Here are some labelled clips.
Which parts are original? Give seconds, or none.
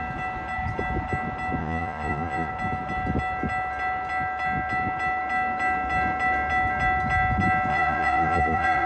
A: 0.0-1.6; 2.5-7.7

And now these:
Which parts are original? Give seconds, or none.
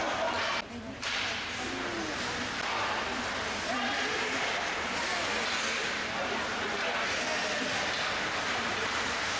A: 0.0-9.4